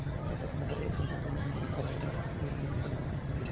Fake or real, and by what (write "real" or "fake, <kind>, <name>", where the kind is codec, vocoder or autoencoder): fake, vocoder, HiFi-GAN